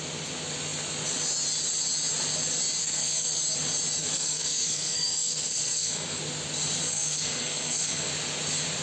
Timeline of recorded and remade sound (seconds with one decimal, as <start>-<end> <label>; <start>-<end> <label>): 0.0-2.8 recorded; 2.8-3.4 remade; 3.4-4.0 recorded; 4.0-6.2 remade; 6.2-6.8 recorded; 6.8-8.1 remade; 8.1-8.8 recorded